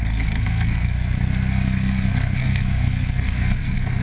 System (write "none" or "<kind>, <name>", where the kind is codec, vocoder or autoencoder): codec, SNAC